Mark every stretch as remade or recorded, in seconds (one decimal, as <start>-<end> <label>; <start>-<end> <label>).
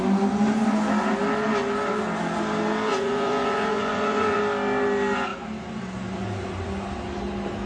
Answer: 0.0-2.9 recorded; 2.9-4.4 remade; 4.4-7.7 recorded